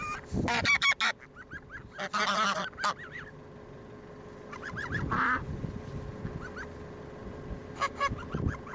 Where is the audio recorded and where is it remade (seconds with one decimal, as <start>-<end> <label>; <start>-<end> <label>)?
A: 0.0-5.4 recorded; 5.4-6.1 remade; 6.1-7.6 recorded; 7.6-8.2 remade; 8.2-8.7 recorded

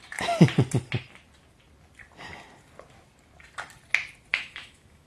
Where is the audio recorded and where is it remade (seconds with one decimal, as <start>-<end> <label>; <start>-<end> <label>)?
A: 0.0-4.3 recorded; 4.3-5.1 remade

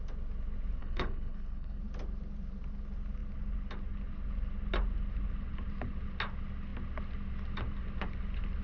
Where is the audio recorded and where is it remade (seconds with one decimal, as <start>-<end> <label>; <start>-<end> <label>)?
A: 0.0-0.8 recorded; 0.8-1.8 remade; 1.8-8.6 recorded

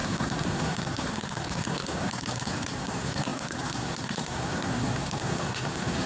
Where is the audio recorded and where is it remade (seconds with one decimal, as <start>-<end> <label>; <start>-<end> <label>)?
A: 0.0-6.1 remade

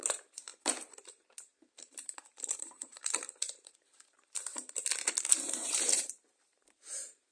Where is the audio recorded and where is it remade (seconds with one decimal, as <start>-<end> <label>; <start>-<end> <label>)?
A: 0.0-0.5 remade; 0.5-1.9 recorded; 1.9-4.5 remade; 4.5-5.2 recorded; 5.2-7.3 remade

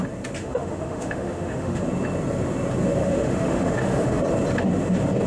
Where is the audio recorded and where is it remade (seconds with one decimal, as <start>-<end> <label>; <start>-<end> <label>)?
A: 0.0-0.4 recorded; 0.4-1.8 remade; 1.8-3.0 recorded; 3.0-4.2 remade; 4.2-5.3 recorded

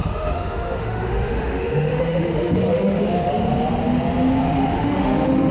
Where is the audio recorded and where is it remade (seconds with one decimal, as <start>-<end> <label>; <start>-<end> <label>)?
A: 0.0-3.3 remade; 3.3-4.4 recorded; 4.4-5.5 remade